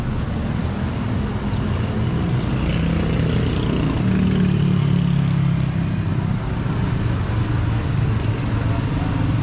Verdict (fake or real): real